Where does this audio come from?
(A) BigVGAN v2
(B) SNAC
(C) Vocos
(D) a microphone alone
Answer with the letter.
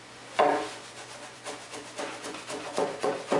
C